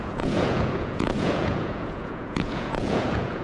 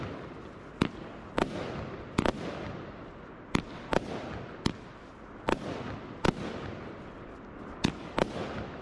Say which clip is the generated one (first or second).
first